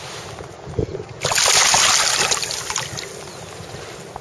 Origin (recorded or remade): recorded